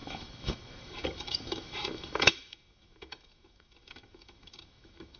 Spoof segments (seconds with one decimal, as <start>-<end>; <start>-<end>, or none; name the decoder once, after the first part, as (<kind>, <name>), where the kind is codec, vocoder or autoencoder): 0.0-5.2 (autoencoder, DAC-VAE)